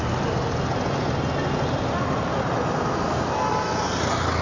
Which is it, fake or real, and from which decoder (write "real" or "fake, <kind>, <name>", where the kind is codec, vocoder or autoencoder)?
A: real